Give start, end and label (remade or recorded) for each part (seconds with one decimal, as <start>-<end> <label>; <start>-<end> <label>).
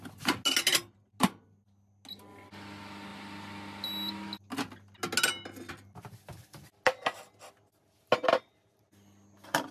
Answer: 0.0-9.7 recorded